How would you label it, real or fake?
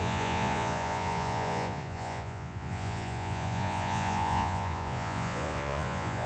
fake